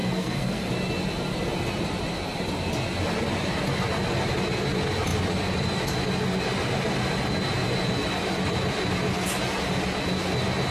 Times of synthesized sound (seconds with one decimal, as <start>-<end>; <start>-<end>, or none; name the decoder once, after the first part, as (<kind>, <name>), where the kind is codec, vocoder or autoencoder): 0.0-0.7 (codec, SNAC)